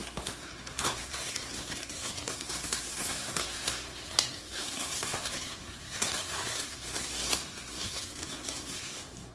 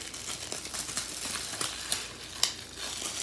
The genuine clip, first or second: second